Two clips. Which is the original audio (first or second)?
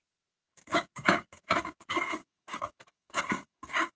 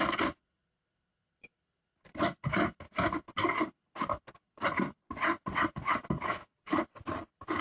second